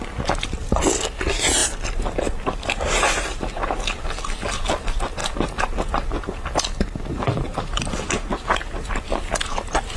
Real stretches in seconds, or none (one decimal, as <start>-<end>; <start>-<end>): 0.0-10.0